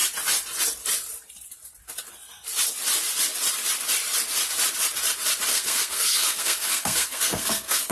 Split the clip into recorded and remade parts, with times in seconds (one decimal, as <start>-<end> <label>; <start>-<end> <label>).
0.0-5.5 recorded; 5.5-7.9 remade